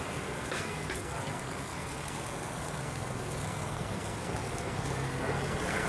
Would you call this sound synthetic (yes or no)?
yes